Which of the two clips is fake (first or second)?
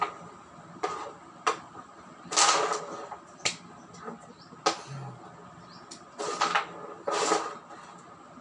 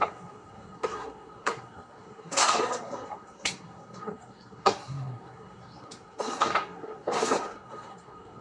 second